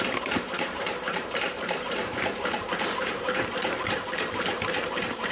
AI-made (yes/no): yes